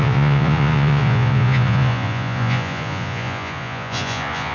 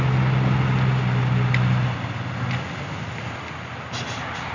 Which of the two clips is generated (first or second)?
first